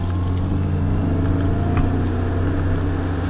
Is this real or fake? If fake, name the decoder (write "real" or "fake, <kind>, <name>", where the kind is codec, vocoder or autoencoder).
real